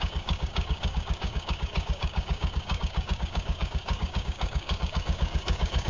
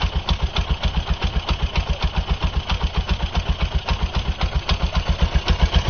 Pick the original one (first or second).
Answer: second